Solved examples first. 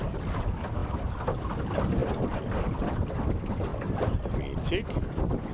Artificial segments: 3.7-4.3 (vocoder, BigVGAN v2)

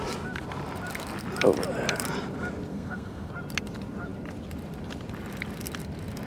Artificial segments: 2.7-3.3 (codec, SNAC)

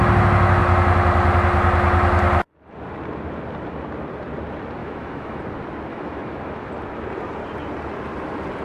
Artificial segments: 4.8-5.4 (autoencoder, DAC-VAE); 5.9-6.7

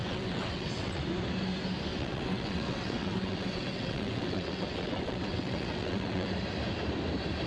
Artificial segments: 0.0-1.0 (vocoder, WaveNeXt); 1.9-6.3

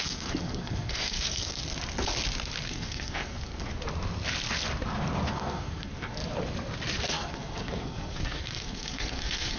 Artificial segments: 0.0-1.6 (codec, SNAC); 2.7-3.7; 5.3-6.2; 7.0-9.6

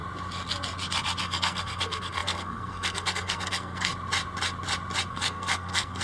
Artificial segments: 1.2-3.9 (codec, SNAC); 5.1-6.0

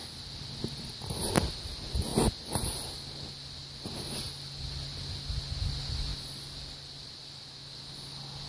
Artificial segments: none